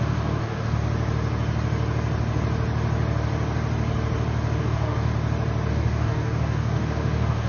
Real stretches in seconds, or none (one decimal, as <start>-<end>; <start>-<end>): 0.8-4.6; 5.1-5.7

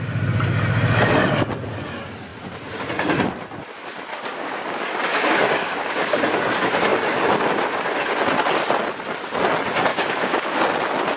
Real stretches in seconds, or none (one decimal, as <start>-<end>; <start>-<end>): 0.0-4.1; 6.1-9.9; 10.6-11.2

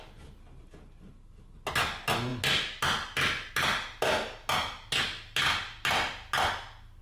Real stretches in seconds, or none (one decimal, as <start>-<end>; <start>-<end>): 0.0-7.0

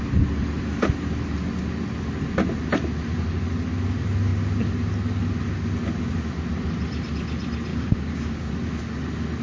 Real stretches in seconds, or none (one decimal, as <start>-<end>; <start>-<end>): 0.0-7.7; 8.5-9.4